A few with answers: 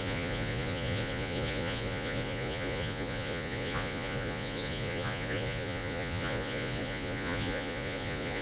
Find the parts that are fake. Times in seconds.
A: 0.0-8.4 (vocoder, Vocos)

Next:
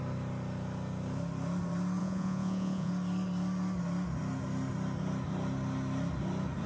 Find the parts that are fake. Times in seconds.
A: 2.0-2.9 (vocoder, Vocos)